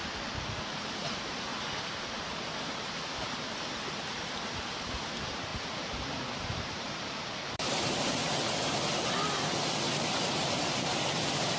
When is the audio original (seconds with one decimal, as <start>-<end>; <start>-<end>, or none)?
0.0-0.6; 1.5-2.0; 8.2-11.2